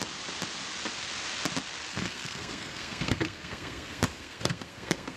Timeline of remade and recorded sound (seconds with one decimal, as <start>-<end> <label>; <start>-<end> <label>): 0.0-1.9 recorded; 1.9-5.2 remade